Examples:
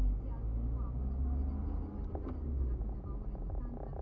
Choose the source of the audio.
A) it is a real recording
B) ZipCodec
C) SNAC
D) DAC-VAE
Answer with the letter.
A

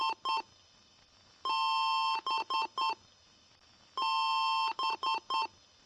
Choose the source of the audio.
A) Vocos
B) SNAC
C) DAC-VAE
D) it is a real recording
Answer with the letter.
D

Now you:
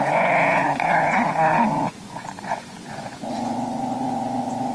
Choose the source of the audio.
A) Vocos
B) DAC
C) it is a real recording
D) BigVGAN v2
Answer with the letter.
A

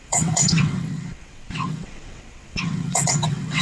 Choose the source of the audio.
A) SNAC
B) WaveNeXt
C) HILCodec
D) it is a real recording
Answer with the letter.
B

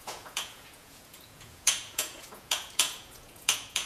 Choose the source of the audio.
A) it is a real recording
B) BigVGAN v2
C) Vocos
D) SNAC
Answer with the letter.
C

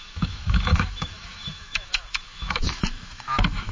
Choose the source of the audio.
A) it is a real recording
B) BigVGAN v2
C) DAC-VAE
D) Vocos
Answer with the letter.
C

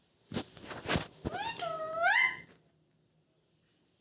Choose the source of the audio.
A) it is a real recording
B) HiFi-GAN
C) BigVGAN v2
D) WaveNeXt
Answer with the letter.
A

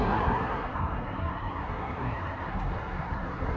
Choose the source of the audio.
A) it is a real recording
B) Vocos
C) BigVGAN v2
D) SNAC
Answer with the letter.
D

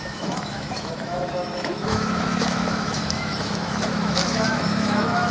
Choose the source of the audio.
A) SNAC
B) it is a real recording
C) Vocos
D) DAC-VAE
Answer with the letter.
D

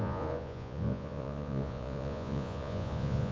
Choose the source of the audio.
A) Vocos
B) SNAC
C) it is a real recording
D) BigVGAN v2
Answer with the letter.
A